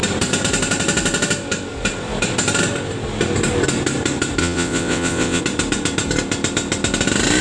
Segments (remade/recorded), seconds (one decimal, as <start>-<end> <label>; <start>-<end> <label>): 0.0-4.4 recorded; 4.4-5.4 remade; 5.4-7.4 recorded